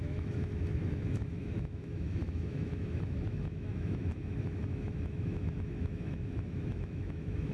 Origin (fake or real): fake